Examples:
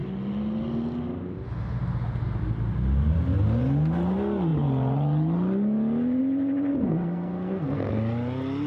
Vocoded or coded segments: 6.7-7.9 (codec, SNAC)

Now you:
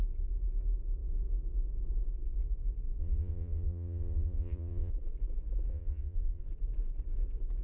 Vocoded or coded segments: 3.0-4.9 (vocoder, Vocos); 5.7-6.4

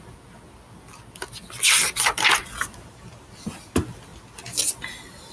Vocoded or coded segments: none